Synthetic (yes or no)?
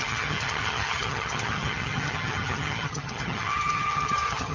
yes